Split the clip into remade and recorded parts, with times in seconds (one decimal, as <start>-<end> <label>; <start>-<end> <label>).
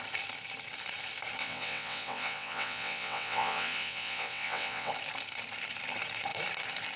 0.0-1.4 recorded; 1.4-4.9 remade; 4.9-7.0 recorded